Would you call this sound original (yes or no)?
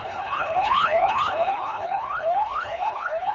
no